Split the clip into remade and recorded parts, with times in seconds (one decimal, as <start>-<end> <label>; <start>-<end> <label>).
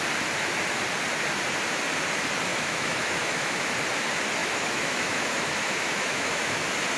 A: 0.0-2.5 recorded; 2.5-3.6 remade; 3.6-4.4 recorded; 4.4-6.6 remade; 6.6-7.0 recorded